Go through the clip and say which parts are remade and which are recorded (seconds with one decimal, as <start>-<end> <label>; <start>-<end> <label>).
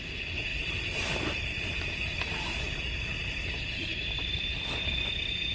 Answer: 0.0-0.5 recorded; 0.5-2.6 remade; 2.6-5.5 recorded